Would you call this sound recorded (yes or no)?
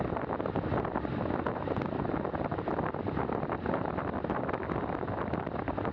yes